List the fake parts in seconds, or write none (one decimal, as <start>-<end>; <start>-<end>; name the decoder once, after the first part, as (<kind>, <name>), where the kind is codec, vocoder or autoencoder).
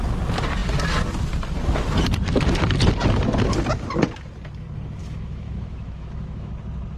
5.0-6.5 (autoencoder, DAC-VAE)